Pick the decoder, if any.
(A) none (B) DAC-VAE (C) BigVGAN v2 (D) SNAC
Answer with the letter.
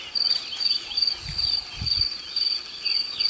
A